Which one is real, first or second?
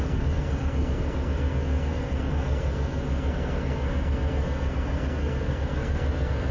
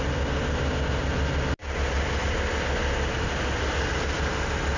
second